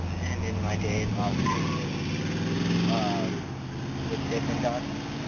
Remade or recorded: recorded